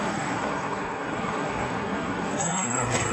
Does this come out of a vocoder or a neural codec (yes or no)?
yes